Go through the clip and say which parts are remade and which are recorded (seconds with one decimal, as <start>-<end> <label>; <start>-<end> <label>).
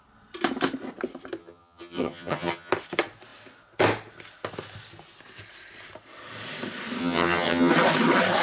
0.0-1.4 recorded; 1.4-2.7 remade; 2.7-7.0 recorded; 7.0-7.7 remade; 7.7-8.4 recorded